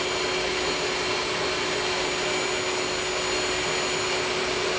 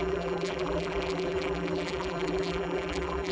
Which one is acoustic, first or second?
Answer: first